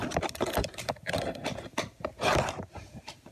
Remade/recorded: remade